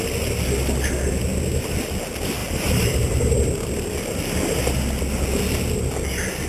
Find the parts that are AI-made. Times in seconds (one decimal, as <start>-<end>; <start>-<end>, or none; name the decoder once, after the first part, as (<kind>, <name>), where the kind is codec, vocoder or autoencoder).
2.4-3.3 (vocoder, BigVGAN v2)